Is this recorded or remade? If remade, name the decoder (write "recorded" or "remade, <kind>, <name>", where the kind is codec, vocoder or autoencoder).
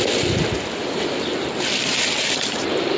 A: recorded